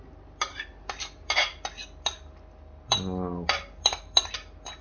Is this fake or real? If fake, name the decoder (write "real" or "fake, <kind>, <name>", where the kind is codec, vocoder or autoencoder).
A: real